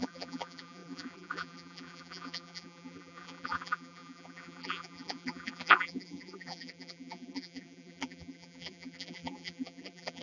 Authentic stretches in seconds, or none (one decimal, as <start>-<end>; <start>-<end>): none